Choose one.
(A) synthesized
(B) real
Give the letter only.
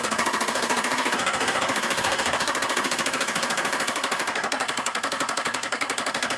A